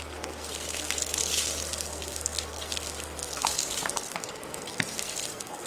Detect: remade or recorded remade